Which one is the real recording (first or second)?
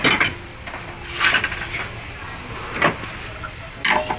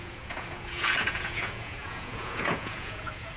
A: first